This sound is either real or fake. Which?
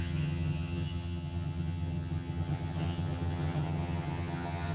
fake